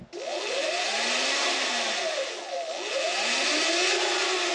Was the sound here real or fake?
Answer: real